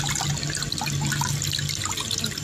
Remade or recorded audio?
recorded